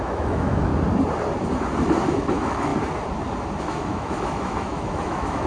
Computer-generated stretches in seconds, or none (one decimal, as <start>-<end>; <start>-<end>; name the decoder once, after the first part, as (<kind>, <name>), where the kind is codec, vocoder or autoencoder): 0.0-0.7 (autoencoder, DAC-VAE); 2.1-2.7; 3.6-5.5